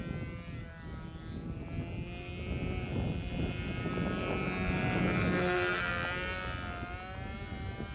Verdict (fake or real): real